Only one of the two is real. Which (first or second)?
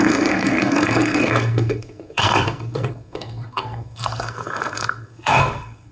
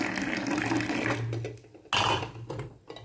second